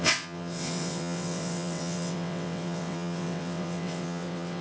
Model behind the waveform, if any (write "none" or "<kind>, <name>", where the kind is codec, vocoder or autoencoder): vocoder, WaveNeXt